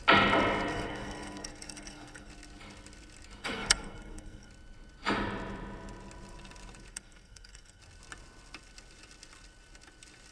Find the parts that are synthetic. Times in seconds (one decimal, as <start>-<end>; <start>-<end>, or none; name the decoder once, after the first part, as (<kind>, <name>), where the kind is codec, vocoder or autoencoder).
0.7-2.3 (codec, SNAC); 3.4-4.5; 6.9-7.8